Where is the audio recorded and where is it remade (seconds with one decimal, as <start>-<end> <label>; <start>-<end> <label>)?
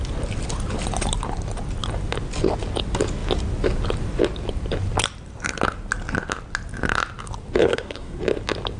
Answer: 0.0-7.6 recorded; 7.6-8.2 remade; 8.2-8.8 recorded